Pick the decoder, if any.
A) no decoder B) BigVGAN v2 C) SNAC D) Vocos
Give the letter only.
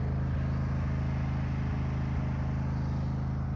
A